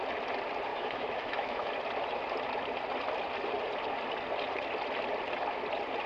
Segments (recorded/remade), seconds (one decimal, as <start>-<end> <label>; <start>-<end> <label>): 0.0-0.7 recorded; 0.7-1.7 remade; 1.7-6.1 recorded